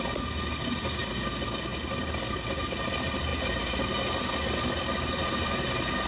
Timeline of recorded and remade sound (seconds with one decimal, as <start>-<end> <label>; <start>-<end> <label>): 0.0-6.1 recorded